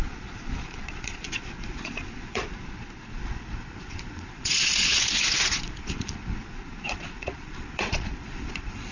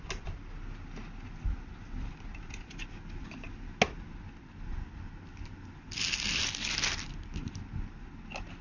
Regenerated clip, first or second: first